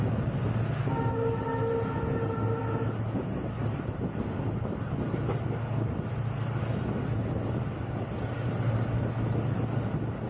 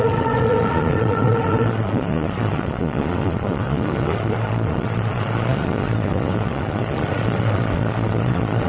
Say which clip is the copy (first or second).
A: second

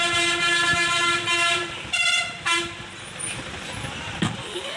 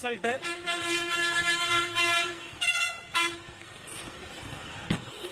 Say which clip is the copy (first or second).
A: second